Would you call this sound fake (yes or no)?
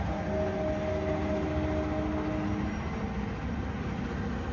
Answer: no